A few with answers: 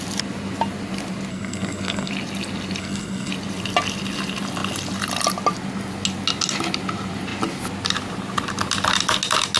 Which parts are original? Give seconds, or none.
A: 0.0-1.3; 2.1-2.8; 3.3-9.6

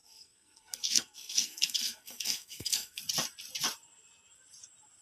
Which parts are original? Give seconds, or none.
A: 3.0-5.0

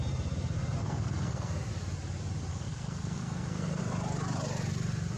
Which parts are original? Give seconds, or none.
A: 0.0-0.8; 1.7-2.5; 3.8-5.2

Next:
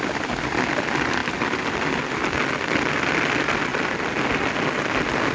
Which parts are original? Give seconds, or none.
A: 0.0-5.3

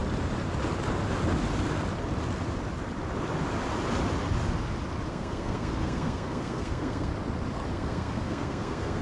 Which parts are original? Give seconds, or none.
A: 0.0-5.1; 7.1-7.7

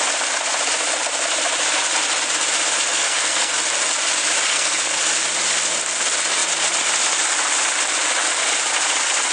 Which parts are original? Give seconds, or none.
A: 0.0-2.9; 3.5-4.5; 5.0-9.3

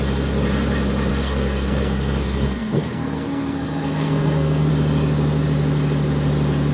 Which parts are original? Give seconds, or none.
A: 0.0-1.1; 4.7-6.7